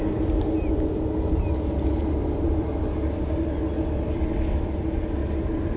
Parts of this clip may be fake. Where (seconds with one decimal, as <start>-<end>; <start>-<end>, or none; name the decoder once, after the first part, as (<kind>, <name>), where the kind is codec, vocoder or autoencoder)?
2.0-2.7 (vocoder, BigVGAN v2); 5.2-5.8